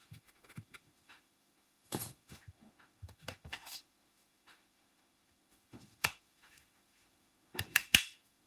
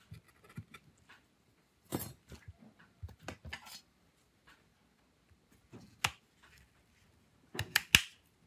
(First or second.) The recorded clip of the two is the second